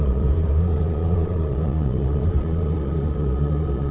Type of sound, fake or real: fake